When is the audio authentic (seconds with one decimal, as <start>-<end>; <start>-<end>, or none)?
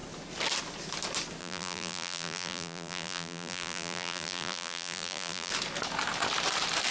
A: 0.0-1.4; 5.5-6.9